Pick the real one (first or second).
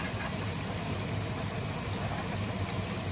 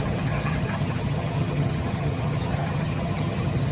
first